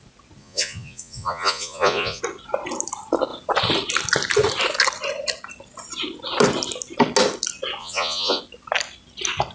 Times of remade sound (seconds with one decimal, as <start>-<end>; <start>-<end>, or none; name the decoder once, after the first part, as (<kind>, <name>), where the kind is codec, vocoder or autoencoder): 0.4-2.2 (vocoder, Vocos); 7.8-8.4

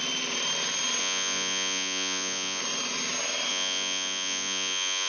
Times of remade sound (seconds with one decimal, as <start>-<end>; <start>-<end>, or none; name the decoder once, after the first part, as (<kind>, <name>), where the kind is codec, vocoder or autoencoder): 1.0-2.6 (vocoder, Vocos); 3.5-5.1

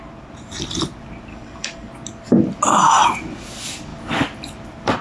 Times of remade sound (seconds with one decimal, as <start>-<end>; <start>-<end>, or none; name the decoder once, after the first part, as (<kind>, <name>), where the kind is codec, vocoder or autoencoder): 1.3-1.9 (codec, DAC)